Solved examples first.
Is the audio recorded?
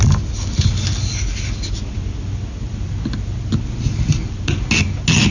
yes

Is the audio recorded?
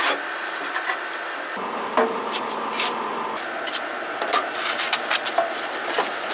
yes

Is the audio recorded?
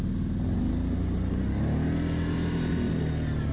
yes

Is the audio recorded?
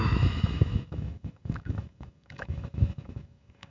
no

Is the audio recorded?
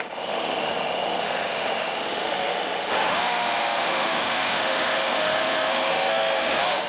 no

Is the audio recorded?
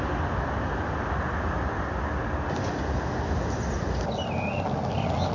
yes